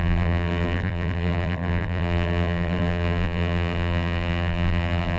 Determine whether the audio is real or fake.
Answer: fake